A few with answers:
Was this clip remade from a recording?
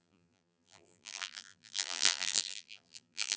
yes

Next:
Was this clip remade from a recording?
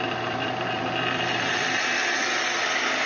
no